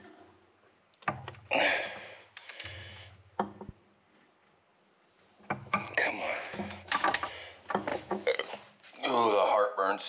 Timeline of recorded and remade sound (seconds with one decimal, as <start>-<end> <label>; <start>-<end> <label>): 0.0-2.4 recorded; 2.4-3.1 remade; 3.1-5.6 recorded; 5.6-7.3 remade; 7.3-7.9 recorded; 7.9-8.5 remade; 8.5-10.1 recorded

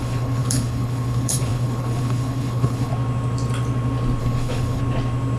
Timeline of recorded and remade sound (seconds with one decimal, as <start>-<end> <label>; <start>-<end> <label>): 0.0-2.9 remade; 2.9-4.2 recorded; 4.2-4.8 remade; 4.8-5.4 recorded